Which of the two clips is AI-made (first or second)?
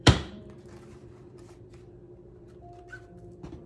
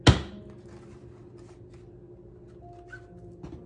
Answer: first